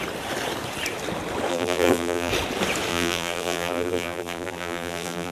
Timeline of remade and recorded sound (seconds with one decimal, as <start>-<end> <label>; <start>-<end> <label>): 0.0-1.5 recorded; 1.5-2.3 remade; 2.3-2.9 recorded; 2.9-5.3 remade